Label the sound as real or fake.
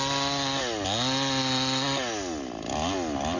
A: real